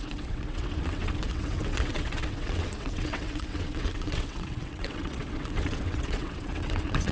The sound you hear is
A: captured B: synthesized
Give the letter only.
B